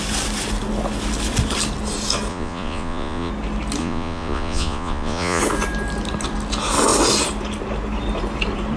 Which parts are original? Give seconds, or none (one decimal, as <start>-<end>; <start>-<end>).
0.0-2.3; 3.3-3.8; 5.4-8.8